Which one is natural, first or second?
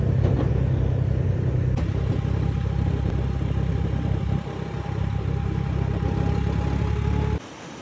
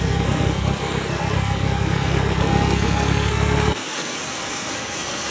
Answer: first